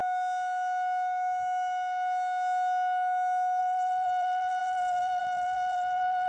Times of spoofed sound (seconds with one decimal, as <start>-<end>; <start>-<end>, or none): 3.6-6.3